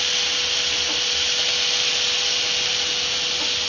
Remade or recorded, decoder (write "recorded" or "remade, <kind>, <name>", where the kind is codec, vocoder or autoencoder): recorded